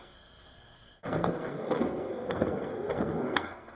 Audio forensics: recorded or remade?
remade